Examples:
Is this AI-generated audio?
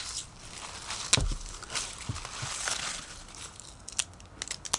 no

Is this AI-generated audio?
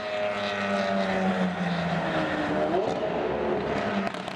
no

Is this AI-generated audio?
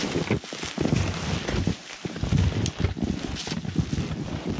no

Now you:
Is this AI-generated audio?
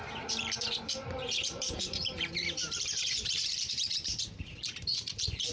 yes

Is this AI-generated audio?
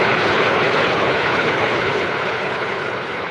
yes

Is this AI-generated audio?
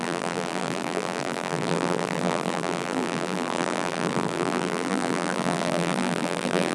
yes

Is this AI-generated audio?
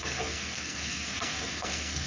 yes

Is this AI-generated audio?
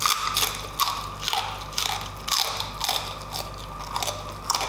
no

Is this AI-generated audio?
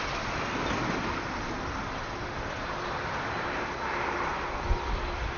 no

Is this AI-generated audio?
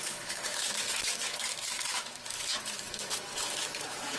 yes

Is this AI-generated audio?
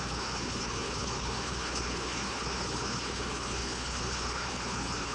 yes